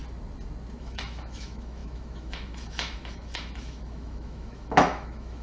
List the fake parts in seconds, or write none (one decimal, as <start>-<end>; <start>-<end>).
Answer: 0.8-5.4